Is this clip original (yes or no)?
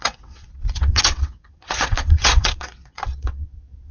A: no